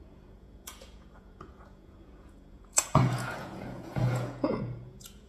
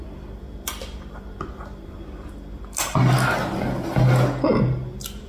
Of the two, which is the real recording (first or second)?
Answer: second